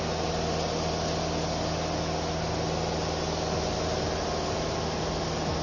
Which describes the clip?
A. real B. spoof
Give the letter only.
A